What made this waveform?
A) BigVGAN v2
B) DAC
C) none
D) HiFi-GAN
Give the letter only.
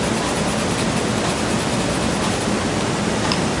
C